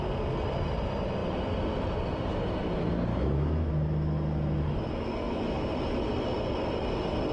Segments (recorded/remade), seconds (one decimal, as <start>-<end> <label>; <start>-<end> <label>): 0.0-3.1 recorded; 3.1-5.7 remade; 5.7-7.3 recorded